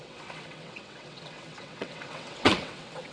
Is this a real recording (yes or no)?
no